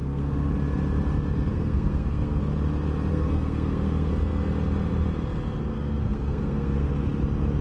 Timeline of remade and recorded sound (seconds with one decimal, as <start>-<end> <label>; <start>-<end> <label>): 0.0-0.5 remade; 0.5-1.5 recorded; 1.5-2.4 remade; 2.4-3.1 recorded; 3.1-4.1 remade; 4.1-5.7 recorded; 5.7-6.9 remade; 6.9-7.6 recorded